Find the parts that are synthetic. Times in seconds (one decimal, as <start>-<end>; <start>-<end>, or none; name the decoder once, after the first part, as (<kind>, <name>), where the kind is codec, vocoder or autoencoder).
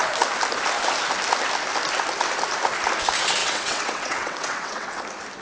3.4-5.0 (vocoder, WaveNeXt)